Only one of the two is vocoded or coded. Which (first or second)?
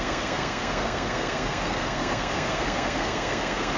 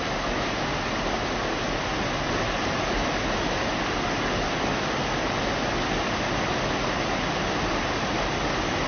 first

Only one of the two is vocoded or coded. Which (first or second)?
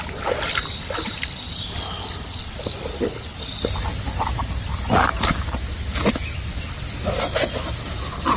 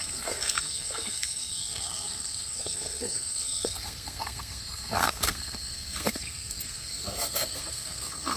second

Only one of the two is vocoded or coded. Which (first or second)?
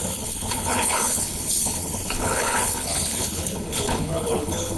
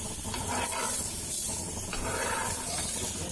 first